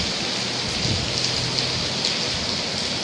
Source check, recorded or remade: recorded